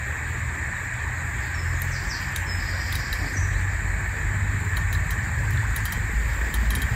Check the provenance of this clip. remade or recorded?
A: recorded